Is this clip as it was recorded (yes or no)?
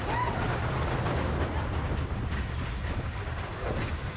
yes